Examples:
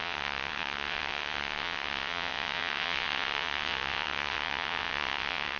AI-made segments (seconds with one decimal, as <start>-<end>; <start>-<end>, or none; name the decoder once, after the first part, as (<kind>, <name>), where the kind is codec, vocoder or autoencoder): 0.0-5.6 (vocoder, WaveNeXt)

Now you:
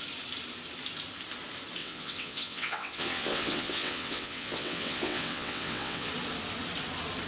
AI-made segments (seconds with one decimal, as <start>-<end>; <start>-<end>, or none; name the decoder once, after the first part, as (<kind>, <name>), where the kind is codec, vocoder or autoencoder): 1.8-6.1 (vocoder, WaveNeXt)

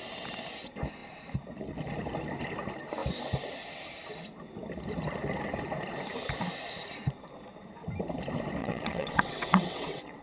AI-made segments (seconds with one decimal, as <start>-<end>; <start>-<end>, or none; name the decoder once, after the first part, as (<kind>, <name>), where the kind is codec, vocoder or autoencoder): 8.6-10.2 (vocoder, WaveNeXt)

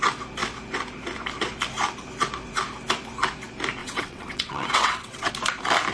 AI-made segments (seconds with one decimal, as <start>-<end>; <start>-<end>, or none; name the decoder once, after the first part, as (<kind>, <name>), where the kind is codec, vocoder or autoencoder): 3.8-5.3 (vocoder, WaveNeXt)

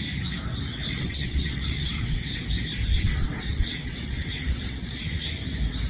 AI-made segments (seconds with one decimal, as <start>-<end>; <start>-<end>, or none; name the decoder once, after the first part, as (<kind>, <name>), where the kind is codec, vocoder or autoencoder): 0.7-2.4 (vocoder, WaveNeXt); 2.9-5.3